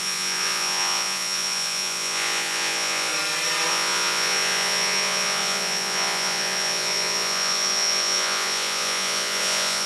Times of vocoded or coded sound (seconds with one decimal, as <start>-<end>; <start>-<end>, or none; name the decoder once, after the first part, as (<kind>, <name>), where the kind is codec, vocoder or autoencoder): 0.0-3.1 (vocoder, Vocos); 3.7-9.9